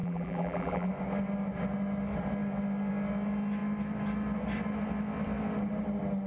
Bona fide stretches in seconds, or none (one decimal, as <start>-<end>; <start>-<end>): 0.9-6.3